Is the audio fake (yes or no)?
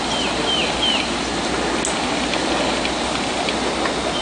no